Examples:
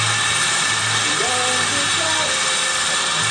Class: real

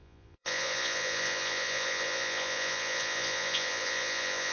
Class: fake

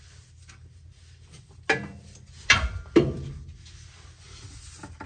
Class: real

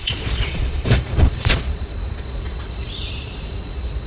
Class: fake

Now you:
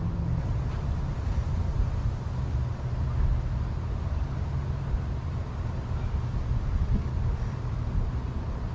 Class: real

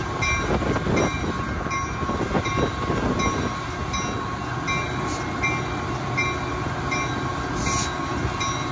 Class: real